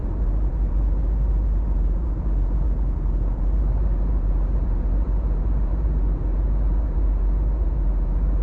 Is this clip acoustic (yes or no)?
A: no